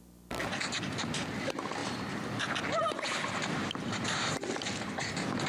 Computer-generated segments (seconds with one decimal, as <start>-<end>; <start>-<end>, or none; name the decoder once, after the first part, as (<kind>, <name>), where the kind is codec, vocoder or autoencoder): none